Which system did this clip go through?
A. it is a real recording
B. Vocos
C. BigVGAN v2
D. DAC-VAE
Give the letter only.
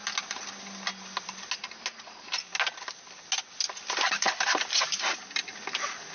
A